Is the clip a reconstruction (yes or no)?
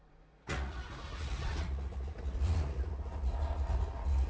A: yes